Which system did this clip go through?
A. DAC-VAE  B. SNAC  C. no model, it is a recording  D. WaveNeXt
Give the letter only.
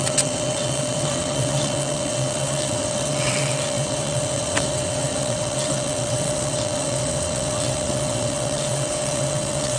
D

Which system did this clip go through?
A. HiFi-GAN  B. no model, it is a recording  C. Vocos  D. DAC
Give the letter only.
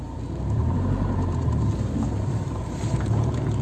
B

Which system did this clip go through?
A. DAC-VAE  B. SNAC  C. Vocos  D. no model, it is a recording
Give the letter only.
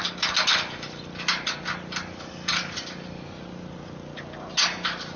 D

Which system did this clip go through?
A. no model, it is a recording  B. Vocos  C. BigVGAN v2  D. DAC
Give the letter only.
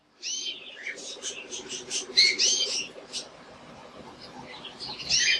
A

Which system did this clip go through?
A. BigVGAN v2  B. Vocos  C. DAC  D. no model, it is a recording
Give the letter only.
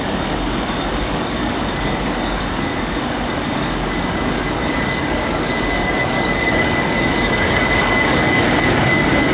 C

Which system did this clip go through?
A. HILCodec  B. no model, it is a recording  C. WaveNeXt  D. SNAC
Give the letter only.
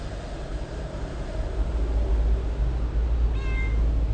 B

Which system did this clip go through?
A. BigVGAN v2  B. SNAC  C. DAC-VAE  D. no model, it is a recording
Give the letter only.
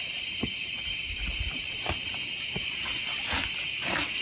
D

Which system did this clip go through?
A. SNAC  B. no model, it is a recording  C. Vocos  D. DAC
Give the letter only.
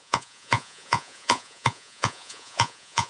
C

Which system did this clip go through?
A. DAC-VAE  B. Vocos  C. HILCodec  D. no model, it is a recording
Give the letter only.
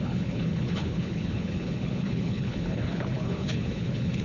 C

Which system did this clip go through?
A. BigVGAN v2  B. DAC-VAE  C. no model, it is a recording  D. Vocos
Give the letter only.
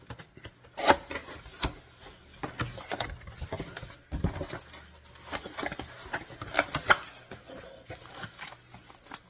C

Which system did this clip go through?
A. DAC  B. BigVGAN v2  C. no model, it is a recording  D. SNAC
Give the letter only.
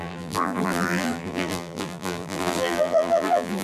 B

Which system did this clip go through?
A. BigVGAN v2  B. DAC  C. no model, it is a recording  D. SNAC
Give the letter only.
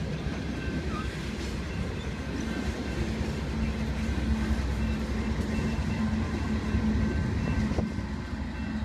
C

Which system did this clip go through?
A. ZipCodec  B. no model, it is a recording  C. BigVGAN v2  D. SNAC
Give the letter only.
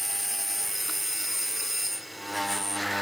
B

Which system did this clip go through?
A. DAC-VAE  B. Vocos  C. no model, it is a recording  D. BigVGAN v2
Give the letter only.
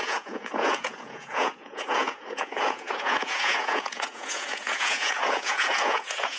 B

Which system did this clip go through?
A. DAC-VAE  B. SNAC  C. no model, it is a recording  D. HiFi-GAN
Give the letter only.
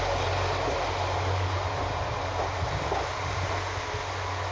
C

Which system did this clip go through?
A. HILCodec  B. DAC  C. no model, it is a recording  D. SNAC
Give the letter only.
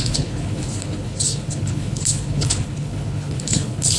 A